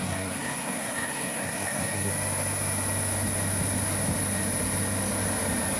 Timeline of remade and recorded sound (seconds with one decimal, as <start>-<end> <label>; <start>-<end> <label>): 0.0-2.1 remade; 2.1-5.8 recorded